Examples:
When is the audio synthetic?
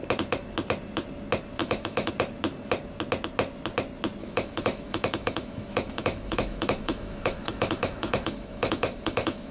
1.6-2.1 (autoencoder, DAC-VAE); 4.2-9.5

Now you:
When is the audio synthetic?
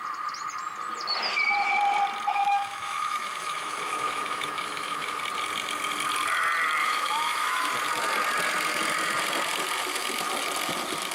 2.3-5.2 (autoencoder, DAC-VAE); 6.8-7.7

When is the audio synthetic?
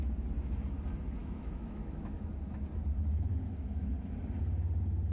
1.2-2.3 (autoencoder, DAC-VAE); 3.3-3.9